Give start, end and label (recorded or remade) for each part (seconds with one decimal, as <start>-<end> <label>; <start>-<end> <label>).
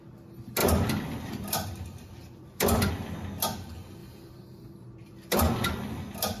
0.0-0.6 recorded; 0.6-2.9 remade; 2.9-4.0 recorded; 4.0-6.0 remade; 6.0-6.4 recorded